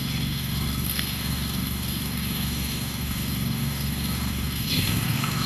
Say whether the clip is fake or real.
fake